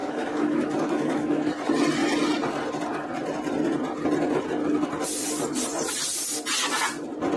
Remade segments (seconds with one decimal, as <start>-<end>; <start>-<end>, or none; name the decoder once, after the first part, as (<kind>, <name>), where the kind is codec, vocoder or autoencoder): 0.0-1.5 (autoencoder, DAC-VAE)